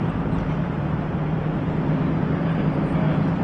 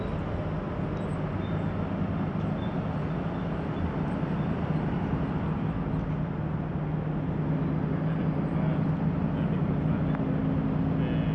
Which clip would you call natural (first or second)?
second